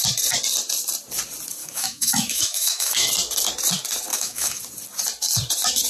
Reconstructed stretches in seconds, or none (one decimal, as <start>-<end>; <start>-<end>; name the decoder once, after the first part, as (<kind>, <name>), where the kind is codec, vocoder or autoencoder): 1.6-3.1 (autoencoder, DAC-VAE); 4.1-4.6